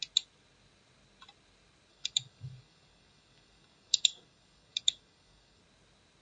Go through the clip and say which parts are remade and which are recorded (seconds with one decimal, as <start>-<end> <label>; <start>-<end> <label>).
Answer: 0.0-1.9 recorded; 1.9-5.6 remade; 5.6-6.2 recorded